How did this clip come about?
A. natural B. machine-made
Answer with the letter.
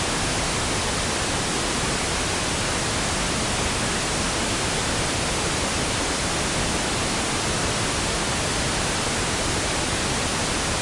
A